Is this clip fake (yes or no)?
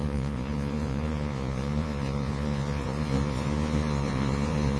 yes